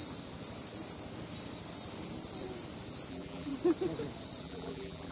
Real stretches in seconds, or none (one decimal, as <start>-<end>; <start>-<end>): 0.0-3.1; 3.5-4.4